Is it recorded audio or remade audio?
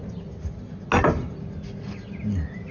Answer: recorded